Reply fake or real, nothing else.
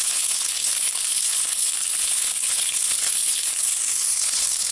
fake